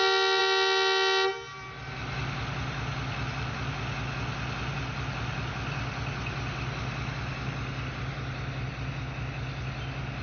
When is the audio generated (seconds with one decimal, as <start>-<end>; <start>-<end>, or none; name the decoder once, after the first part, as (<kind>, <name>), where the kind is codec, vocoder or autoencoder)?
none